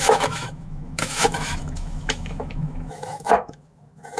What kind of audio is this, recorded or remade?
remade